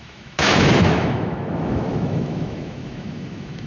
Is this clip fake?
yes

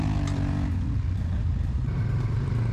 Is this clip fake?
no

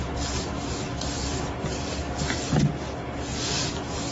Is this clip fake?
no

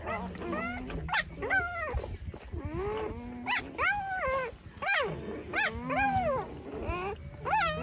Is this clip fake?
no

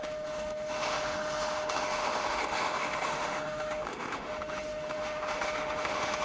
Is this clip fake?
yes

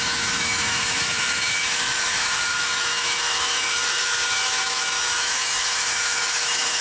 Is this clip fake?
yes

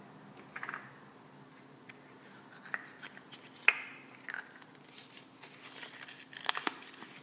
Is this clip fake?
no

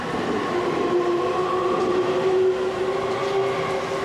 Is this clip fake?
no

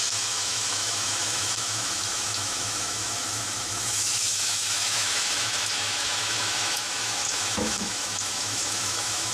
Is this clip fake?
yes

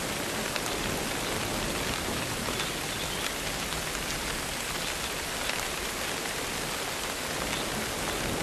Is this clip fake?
no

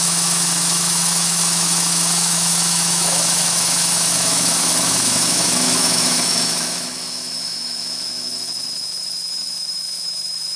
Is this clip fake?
yes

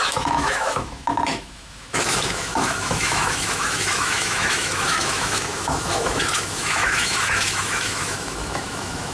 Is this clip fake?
yes